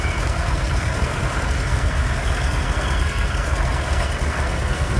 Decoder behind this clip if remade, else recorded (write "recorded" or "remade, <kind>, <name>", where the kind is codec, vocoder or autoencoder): remade, codec, SNAC